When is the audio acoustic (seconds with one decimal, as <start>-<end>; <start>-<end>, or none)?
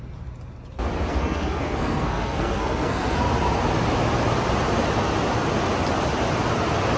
0.0-1.1; 3.2-7.0